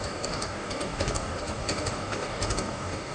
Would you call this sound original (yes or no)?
no